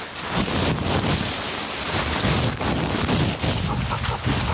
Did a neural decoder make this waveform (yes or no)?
no